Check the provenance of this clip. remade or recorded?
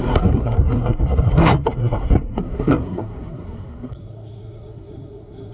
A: remade